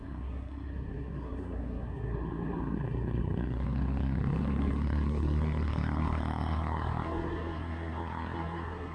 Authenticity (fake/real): fake